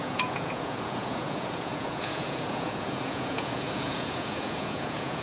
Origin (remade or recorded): remade